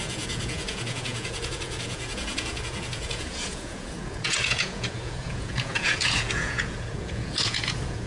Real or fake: fake